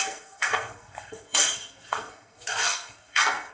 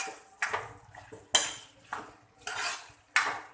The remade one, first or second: first